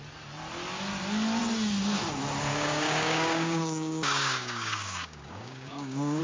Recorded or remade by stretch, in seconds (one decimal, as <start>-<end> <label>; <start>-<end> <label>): 0.0-2.5 recorded; 2.5-6.2 remade